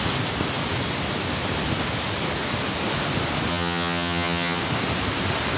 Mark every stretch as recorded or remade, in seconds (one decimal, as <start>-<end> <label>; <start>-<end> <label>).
0.0-3.5 recorded; 3.5-4.6 remade; 4.6-5.6 recorded